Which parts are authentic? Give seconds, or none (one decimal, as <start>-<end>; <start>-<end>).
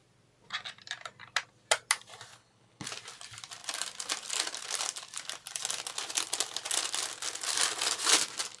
0.0-2.3; 2.9-8.6